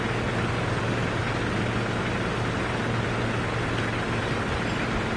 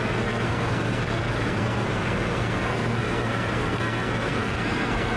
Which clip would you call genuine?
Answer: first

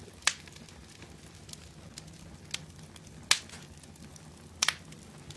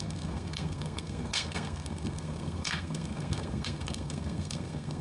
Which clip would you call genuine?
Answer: first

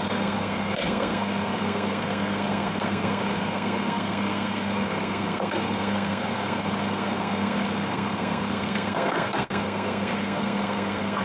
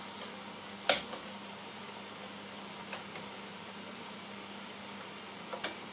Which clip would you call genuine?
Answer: second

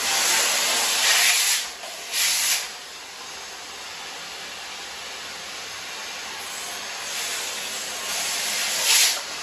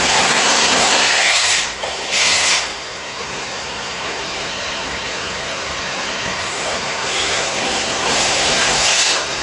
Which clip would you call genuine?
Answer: first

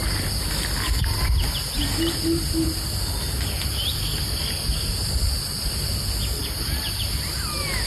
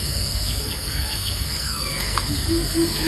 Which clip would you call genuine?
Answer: first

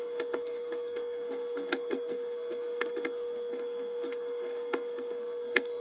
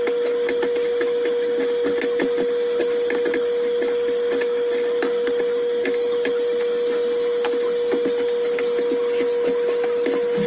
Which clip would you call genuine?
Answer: second